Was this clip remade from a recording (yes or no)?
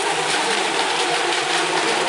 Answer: yes